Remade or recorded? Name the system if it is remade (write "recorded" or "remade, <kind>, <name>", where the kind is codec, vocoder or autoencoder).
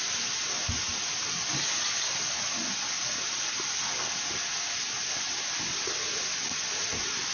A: recorded